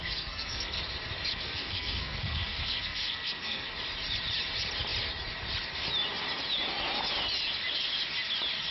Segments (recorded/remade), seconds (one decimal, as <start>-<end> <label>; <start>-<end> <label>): 0.0-0.8 remade; 0.8-1.3 recorded; 1.3-3.7 remade; 3.7-8.7 recorded